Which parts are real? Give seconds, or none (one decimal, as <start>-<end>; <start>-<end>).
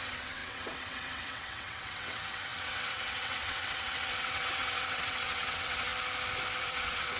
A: 5.9-6.6